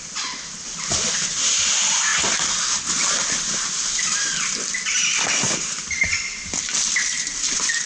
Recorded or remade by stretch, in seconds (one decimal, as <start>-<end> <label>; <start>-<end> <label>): 0.0-7.9 recorded